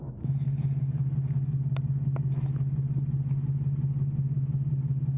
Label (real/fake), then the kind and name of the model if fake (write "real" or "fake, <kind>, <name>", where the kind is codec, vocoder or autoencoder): real